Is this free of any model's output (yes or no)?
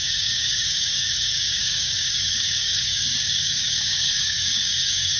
no